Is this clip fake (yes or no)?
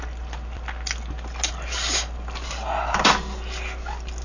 no